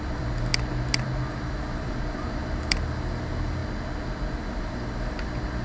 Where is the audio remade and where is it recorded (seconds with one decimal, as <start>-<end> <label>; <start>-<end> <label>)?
0.0-0.5 remade; 0.5-1.3 recorded; 1.3-3.6 remade; 3.6-4.4 recorded; 4.4-5.6 remade